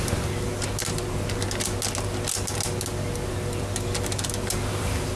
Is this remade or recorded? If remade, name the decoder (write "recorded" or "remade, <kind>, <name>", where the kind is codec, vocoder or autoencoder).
recorded